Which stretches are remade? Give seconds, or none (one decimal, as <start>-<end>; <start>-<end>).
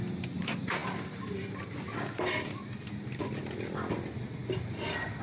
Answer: none